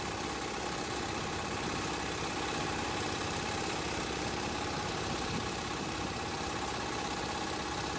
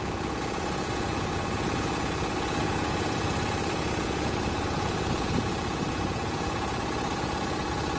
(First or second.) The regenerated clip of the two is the second